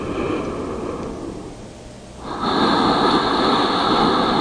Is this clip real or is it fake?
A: real